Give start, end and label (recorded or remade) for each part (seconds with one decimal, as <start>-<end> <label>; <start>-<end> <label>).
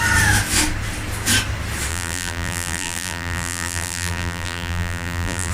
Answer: 0.0-1.9 recorded; 1.9-5.5 remade